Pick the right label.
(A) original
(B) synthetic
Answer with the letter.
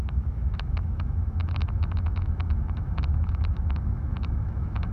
B